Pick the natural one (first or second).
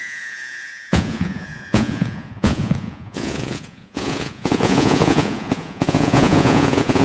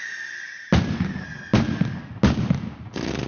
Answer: second